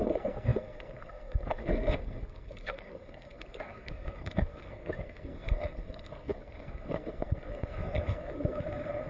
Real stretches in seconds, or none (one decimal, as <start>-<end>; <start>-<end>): none